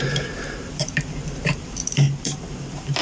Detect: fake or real fake